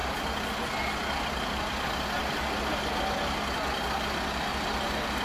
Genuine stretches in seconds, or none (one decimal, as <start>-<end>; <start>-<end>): 0.0-5.2